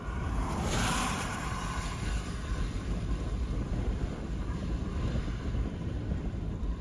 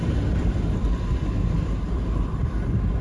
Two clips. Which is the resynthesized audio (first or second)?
first